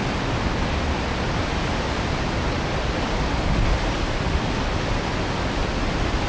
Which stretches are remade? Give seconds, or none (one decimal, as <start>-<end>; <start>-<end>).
none